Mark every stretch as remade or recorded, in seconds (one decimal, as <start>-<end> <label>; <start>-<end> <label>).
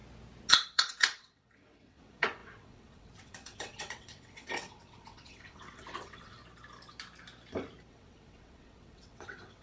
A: 0.0-0.5 recorded; 0.5-6.4 remade; 6.4-7.9 recorded; 7.9-9.6 remade